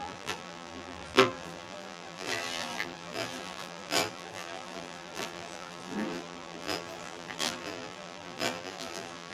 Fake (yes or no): yes